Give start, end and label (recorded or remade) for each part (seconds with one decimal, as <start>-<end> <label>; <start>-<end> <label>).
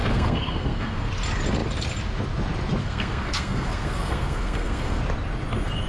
0.0-1.1 remade; 1.1-2.8 recorded; 2.8-5.0 remade; 5.0-5.9 recorded